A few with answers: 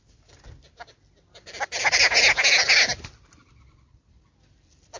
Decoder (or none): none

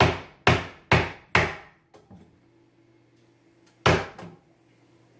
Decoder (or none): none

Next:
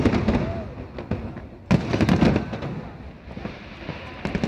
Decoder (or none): none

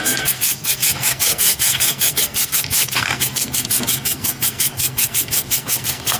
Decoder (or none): codec, SNAC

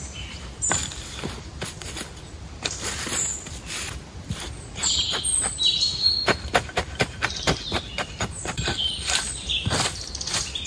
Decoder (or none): vocoder, BigVGAN v2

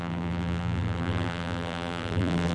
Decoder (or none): vocoder, BigVGAN v2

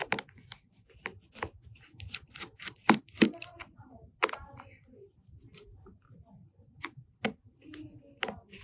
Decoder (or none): none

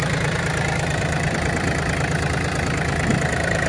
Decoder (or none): vocoder, BigVGAN v2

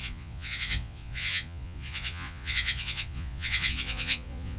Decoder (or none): vocoder, Vocos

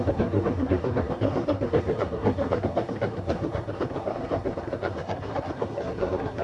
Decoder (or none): codec, SNAC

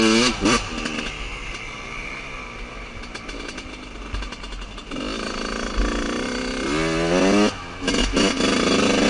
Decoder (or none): none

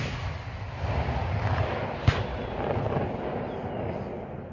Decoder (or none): none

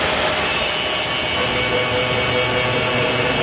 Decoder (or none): none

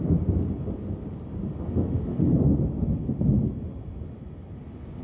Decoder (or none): none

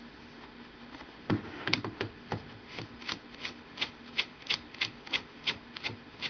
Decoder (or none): autoencoder, DAC-VAE